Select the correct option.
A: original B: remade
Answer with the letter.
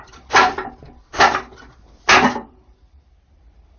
A